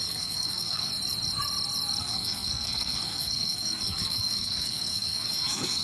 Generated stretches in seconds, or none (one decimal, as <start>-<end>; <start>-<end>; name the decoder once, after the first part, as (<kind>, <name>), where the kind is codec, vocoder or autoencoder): 0.0-0.9 (codec, SNAC); 2.0-5.8